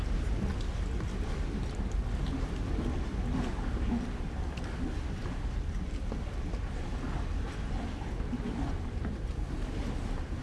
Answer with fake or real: real